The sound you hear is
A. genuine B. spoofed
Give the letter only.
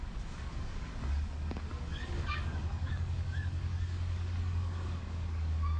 B